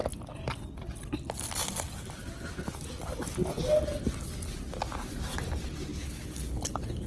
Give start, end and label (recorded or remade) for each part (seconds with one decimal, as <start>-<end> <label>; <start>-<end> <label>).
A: 0.0-5.9 recorded; 5.9-7.1 remade